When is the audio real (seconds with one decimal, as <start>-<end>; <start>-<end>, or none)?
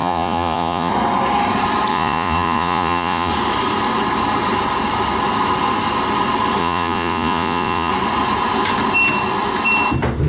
0.9-1.9; 3.3-6.6; 7.9-10.3